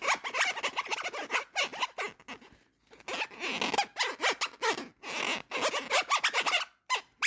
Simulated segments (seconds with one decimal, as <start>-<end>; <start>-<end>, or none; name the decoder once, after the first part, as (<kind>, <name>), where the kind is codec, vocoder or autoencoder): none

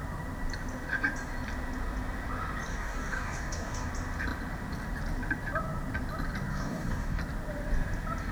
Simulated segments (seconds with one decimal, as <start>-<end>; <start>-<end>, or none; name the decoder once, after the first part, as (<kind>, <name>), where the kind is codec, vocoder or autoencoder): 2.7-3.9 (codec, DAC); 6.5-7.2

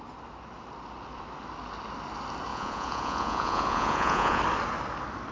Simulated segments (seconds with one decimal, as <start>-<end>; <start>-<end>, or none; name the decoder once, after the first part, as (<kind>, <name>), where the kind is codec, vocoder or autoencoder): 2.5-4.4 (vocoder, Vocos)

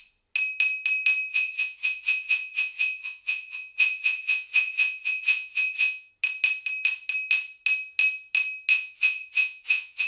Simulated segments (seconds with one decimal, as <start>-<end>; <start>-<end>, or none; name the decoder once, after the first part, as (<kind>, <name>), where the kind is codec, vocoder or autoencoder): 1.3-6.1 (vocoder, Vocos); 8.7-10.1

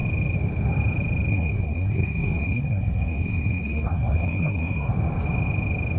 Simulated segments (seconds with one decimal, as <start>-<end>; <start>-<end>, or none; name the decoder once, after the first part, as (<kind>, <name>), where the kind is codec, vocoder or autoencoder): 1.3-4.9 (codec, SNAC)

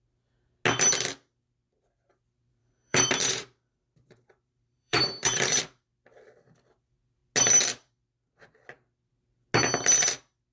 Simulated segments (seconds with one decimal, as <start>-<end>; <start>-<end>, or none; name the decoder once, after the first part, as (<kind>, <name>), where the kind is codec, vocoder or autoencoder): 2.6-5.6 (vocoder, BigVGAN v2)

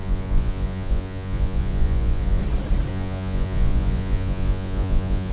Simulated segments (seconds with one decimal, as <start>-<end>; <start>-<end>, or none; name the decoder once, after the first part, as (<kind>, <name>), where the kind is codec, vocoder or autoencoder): 0.0-2.4 (vocoder, Vocos); 2.9-5.3